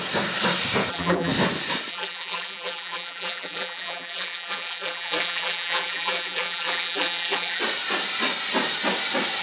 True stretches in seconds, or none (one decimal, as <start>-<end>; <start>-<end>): 0.0-0.9; 1.3-1.9; 7.6-9.4